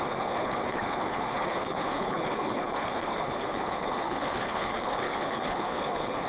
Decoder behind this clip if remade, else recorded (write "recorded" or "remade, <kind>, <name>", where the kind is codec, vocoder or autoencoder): remade, codec, HILCodec